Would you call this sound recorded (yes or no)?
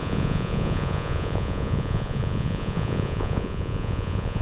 no